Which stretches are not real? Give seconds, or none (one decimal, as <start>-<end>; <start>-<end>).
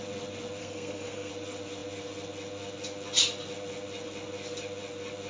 0.6-1.3